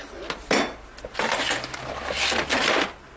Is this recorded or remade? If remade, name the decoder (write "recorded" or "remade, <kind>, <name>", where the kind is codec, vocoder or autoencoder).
recorded